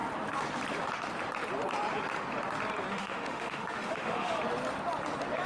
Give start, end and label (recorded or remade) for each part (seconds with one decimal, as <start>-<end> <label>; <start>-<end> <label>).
0.0-2.9 recorded; 2.9-4.4 remade; 4.4-5.5 recorded